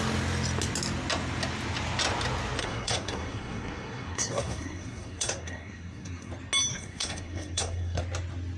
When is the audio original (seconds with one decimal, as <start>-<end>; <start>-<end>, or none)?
0.0-2.6; 6.3-6.7; 8.0-8.6